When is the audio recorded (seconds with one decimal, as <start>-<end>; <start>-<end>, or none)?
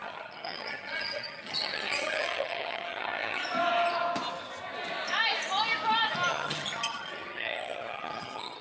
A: 3.4-6.3